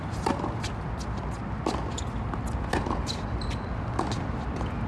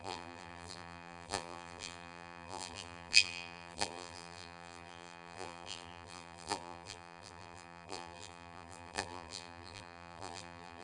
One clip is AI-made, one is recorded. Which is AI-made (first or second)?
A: second